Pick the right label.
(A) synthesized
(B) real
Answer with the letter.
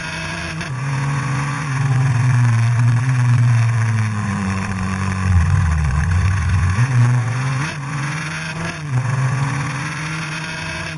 A